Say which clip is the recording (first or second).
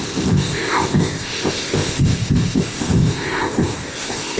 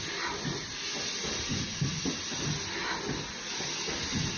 second